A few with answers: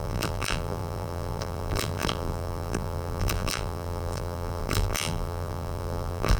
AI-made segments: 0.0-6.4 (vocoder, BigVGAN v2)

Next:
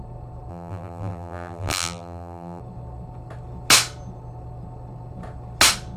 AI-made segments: 0.5-2.6 (vocoder, BigVGAN v2)

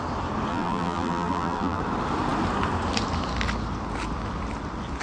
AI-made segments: 0.5-1.8 (vocoder, BigVGAN v2)

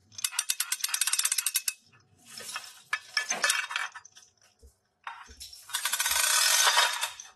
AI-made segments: none

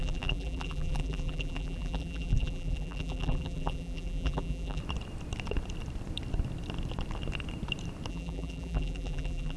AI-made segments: 0.0-4.8 (vocoder, BigVGAN v2); 8.1-9.6

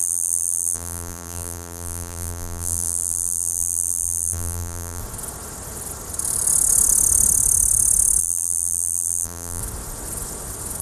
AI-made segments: 0.0-5.0 (vocoder, BigVGAN v2); 8.2-9.6

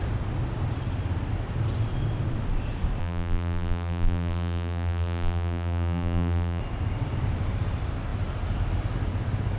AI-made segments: 3.0-6.6 (vocoder, BigVGAN v2)

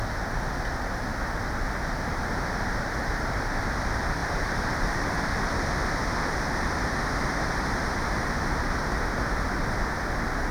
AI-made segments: 2.1-3.0 (vocoder, BigVGAN v2); 4.2-5.2